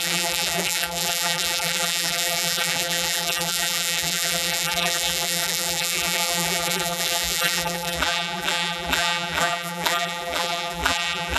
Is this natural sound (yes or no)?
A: no